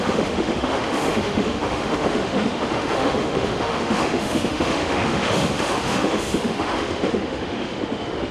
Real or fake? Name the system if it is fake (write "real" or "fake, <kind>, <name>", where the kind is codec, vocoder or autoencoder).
fake, autoencoder, DAC-VAE